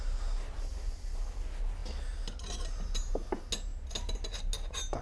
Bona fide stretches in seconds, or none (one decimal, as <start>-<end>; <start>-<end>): 0.0-5.0